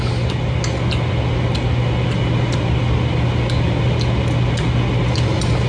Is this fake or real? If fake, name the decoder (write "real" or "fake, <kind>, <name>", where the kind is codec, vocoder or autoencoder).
real